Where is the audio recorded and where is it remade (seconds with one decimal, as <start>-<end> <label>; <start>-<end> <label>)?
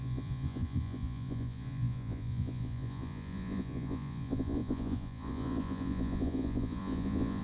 0.0-7.4 remade